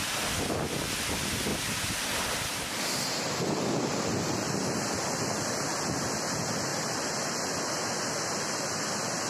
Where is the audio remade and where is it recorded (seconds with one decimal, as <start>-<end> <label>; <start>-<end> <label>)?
0.0-1.5 recorded; 1.5-6.1 remade; 6.1-6.7 recorded; 6.7-7.3 remade; 7.3-9.3 recorded

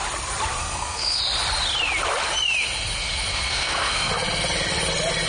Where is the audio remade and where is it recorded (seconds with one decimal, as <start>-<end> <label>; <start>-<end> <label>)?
0.0-0.6 recorded; 0.6-1.2 remade; 1.2-3.3 recorded; 3.3-4.1 remade; 4.1-5.3 recorded

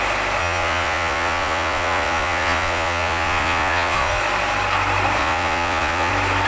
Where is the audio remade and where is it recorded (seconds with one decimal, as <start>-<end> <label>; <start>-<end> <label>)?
0.0-0.4 recorded; 0.4-4.2 remade; 4.2-5.2 recorded; 5.2-6.1 remade; 6.1-6.5 recorded

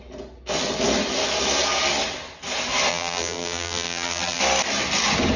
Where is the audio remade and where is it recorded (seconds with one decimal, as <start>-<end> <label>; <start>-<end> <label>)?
0.0-2.9 recorded; 2.9-4.4 remade; 4.4-5.4 recorded

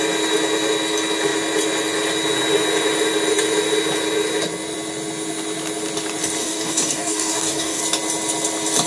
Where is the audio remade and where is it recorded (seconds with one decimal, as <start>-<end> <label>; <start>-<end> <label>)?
0.0-6.4 recorded; 6.4-7.8 remade; 7.8-8.9 recorded